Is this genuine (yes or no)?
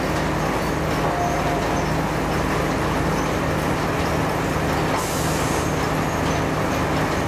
yes